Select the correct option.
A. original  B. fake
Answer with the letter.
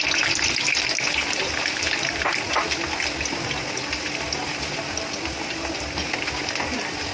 A